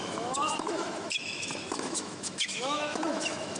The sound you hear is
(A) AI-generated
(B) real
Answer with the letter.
A